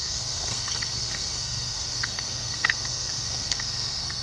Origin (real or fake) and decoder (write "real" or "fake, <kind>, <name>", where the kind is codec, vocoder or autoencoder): fake, codec, SNAC